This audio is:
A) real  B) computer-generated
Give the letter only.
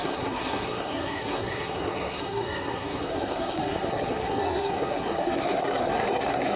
B